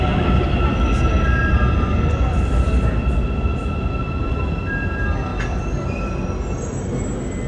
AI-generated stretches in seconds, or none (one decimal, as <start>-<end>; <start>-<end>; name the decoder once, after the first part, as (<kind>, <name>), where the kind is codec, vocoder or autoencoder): none